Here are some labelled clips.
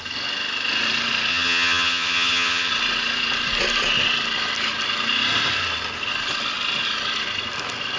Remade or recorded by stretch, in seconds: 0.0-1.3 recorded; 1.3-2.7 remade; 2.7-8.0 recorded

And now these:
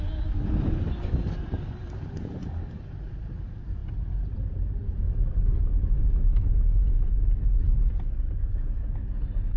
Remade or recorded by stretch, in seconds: 0.0-9.6 recorded

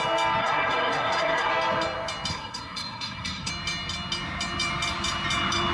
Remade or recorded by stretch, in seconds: 0.0-0.4 recorded; 0.4-1.5 remade; 1.5-2.3 recorded; 2.3-3.5 remade; 3.5-5.7 recorded